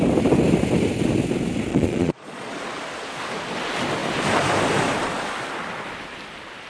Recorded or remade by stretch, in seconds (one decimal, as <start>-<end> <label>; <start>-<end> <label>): 0.0-1.7 recorded; 1.7-2.5 remade; 2.5-6.7 recorded